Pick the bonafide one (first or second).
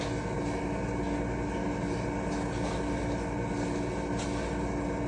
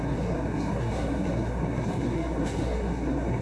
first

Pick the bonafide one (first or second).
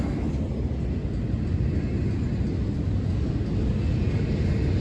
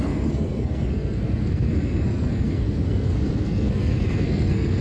first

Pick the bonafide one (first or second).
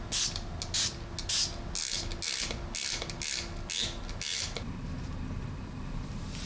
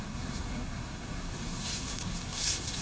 first